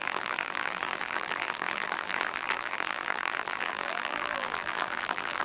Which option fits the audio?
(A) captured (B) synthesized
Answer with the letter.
B